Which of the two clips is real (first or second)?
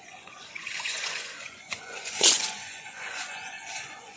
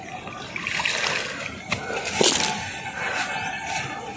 second